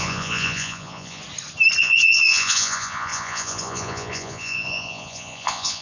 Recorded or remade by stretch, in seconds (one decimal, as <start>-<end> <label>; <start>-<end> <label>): 0.0-1.2 remade; 1.2-1.8 recorded; 1.8-5.8 remade